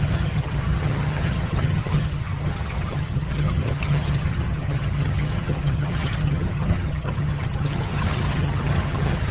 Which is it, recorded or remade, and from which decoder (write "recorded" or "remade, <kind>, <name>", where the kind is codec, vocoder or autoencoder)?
remade, vocoder, HiFi-GAN